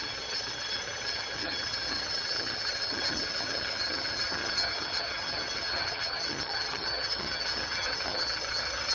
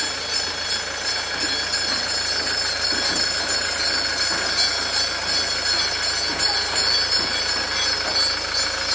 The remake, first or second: first